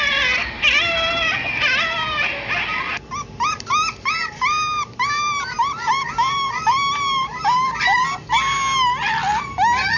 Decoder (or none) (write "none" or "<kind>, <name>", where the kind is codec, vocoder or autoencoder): none